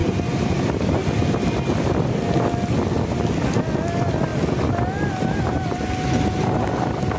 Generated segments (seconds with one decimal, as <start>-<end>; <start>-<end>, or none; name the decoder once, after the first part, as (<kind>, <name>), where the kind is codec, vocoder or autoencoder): 0.0-0.9 (vocoder, BigVGAN v2)